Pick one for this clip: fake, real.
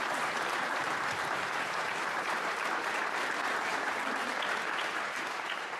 fake